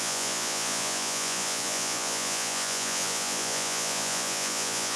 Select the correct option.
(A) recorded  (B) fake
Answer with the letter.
B